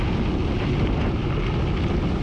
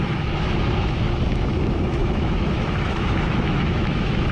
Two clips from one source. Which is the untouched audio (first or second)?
first